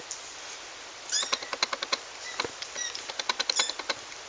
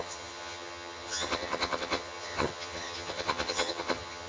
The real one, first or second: first